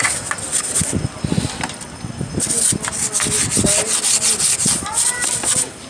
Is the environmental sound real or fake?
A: real